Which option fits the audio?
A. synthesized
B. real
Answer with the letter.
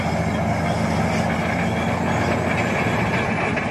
B